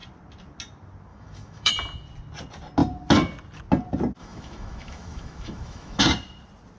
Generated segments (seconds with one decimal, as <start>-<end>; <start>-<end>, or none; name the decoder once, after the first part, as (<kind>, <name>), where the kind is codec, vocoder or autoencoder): 1.1-1.7 (autoencoder, DAC-VAE); 4.2-6.0